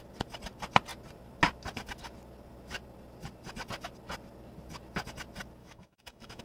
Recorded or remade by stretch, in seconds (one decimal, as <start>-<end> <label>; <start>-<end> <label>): 0.0-5.6 recorded; 5.6-6.4 remade